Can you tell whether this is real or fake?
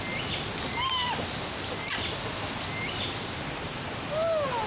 real